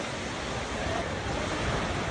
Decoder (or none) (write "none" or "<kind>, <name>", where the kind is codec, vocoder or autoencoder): none